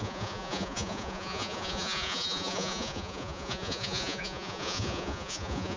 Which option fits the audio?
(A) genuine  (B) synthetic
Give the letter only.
B